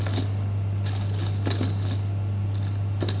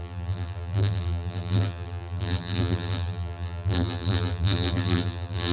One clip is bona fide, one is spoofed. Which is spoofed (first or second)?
second